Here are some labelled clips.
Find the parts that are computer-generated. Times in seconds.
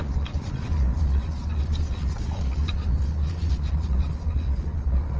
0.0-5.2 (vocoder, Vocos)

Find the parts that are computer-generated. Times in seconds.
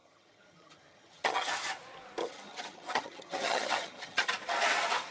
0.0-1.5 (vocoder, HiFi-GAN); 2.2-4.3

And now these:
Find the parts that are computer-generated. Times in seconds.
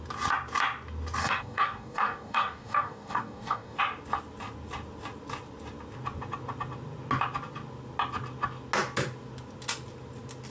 1.2-3.8 (codec, DAC)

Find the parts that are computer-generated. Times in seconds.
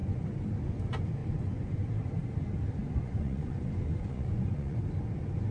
1.2-1.9 (vocoder, Vocos); 2.8-4.8